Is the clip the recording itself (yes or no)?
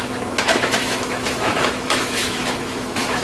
no